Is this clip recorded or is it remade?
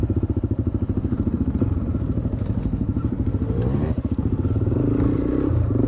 remade